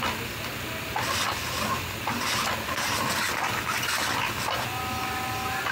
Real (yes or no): yes